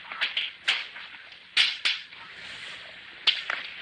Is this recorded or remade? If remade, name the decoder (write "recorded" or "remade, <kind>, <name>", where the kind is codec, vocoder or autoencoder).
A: recorded